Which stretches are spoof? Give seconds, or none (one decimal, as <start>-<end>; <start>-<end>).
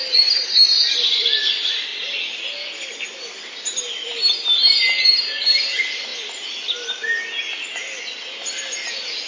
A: none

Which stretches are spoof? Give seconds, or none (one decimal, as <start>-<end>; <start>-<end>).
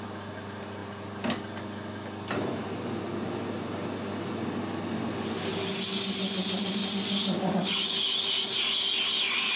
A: none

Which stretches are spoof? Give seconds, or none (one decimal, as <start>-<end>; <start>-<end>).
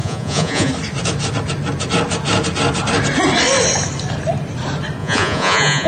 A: 0.0-0.7; 5.0-5.9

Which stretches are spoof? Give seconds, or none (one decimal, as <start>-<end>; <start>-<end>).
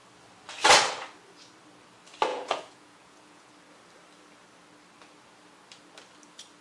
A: 2.3-3.5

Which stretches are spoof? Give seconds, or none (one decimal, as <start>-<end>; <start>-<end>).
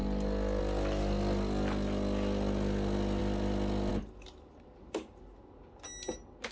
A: none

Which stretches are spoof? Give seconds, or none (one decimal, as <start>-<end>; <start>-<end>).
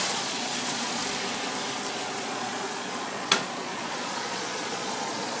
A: 0.0-1.0; 2.1-5.4